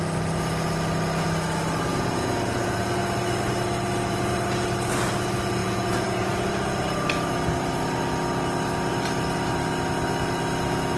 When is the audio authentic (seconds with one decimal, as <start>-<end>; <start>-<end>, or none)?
0.0-1.9; 2.9-5.6; 6.5-11.0